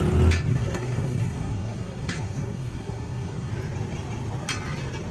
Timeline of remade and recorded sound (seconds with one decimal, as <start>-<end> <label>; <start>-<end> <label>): 0.0-0.5 recorded; 0.5-3.5 remade; 3.5-5.1 recorded